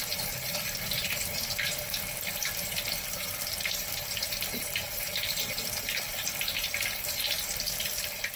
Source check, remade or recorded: recorded